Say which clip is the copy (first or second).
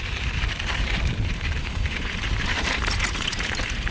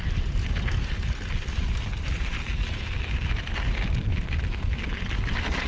first